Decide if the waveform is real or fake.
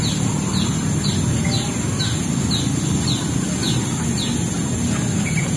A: real